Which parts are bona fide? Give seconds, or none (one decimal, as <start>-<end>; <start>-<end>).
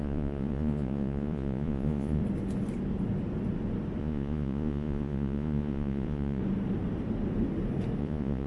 2.2-4.0; 6.4-8.0